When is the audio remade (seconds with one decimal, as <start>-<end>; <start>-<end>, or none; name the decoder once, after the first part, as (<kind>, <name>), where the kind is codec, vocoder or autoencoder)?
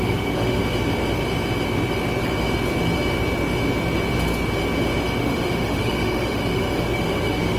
0.0-0.6 (autoencoder, DAC-VAE); 5.2-7.6